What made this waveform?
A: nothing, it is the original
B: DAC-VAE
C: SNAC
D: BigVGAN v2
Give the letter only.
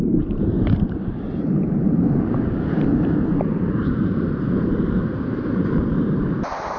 D